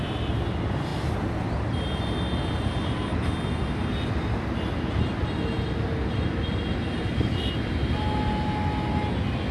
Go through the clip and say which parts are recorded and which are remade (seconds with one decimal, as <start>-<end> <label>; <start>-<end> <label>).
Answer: 0.0-9.5 recorded